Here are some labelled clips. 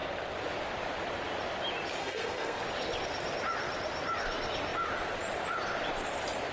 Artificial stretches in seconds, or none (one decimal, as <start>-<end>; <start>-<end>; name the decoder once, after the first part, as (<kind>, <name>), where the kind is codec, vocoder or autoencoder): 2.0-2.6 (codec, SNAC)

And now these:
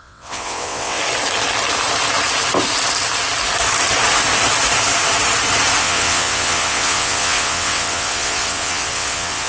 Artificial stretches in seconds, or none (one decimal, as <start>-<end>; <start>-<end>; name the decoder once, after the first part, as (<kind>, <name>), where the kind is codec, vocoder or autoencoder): 0.0-1.0 (vocoder, WaveNeXt); 5.8-9.5

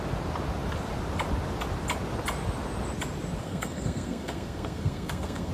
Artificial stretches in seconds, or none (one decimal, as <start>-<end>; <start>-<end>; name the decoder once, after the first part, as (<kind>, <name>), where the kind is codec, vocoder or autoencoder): 3.4-5.5 (codec, SNAC)

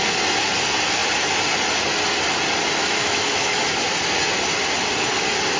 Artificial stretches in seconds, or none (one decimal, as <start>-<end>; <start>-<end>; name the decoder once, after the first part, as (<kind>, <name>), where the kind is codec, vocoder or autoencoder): 2.8-3.6 (autoencoder, DAC-VAE)

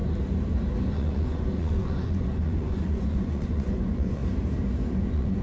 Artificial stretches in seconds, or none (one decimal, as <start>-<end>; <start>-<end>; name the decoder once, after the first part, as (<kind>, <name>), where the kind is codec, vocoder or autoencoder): 0.9-4.2 (vocoder, Vocos); 5.0-5.4

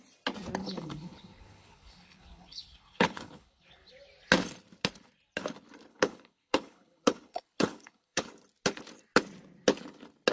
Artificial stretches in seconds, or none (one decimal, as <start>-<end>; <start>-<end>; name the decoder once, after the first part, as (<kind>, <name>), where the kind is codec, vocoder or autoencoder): 0.6-3.9 (codec, HILCodec); 5.9-8.3

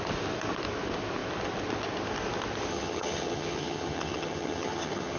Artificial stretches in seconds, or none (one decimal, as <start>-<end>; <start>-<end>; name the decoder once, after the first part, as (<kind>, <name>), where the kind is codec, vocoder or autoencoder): 2.7-5.2 (vocoder, HiFi-GAN)

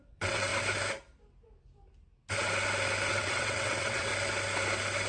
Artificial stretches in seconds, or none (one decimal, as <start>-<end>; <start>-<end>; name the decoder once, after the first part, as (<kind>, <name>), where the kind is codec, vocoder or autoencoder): 0.0-0.5 (vocoder, WaveNeXt); 3.1-4.1